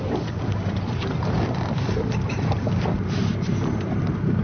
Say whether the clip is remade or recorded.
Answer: recorded